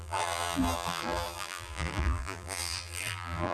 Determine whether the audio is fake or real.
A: fake